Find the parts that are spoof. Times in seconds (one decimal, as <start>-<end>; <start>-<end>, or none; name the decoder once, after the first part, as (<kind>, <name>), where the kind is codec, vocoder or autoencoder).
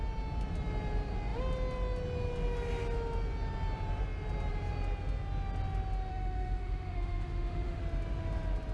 6.1-7.8 (autoencoder, DAC-VAE)